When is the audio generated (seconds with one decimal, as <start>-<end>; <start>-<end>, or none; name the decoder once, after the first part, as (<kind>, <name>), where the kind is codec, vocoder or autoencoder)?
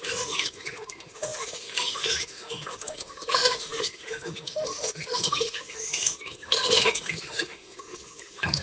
0.0-8.6 (autoencoder, DAC-VAE)